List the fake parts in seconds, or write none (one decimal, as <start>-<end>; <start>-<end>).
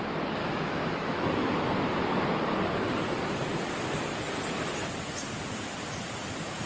0.4-1.7